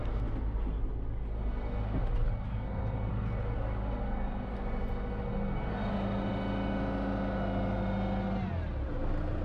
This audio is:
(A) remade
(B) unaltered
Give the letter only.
B